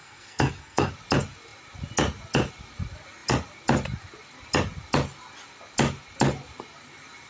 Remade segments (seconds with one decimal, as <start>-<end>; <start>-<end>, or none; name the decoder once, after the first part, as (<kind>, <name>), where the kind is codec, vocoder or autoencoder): 0.0-0.9 (codec, SNAC)